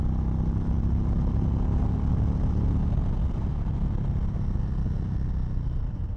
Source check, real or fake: real